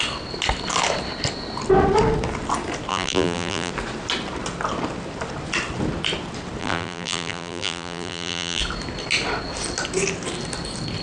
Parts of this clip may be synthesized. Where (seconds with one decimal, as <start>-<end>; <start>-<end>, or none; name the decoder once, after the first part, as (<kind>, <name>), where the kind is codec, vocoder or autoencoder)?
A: 2.9-3.7 (vocoder, BigVGAN v2); 6.6-8.6